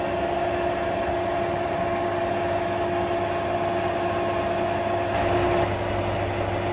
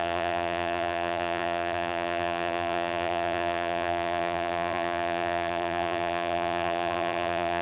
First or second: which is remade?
second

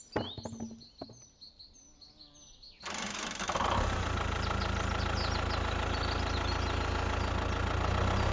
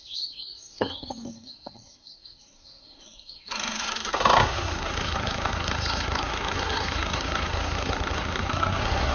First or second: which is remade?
second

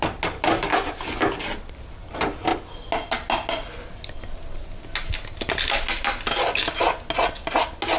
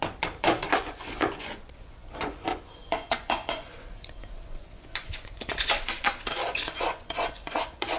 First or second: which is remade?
second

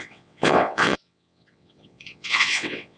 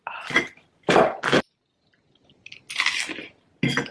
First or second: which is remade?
first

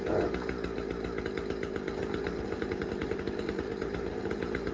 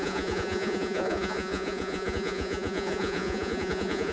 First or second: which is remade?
second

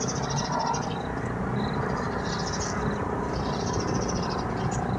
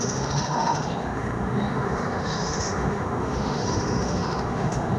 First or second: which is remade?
second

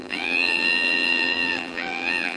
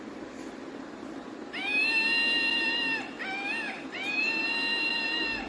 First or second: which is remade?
first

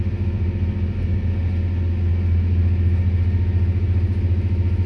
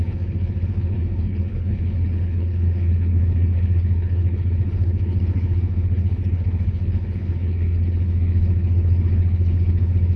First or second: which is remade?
second